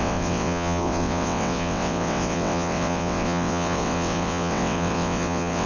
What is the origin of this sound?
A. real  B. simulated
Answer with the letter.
B